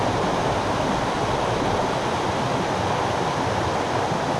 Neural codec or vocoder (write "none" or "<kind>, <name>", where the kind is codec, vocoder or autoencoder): none